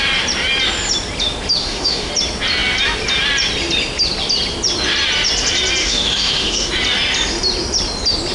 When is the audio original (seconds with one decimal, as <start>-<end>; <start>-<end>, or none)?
0.0-1.6; 2.1-5.8; 6.7-8.3